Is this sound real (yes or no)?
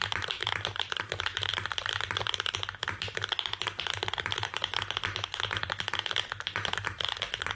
no